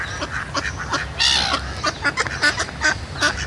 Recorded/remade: recorded